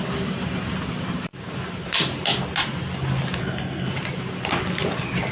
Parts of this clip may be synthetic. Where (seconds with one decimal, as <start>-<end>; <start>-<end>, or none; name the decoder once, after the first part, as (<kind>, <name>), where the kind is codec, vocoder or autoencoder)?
3.4-3.9 (codec, SNAC)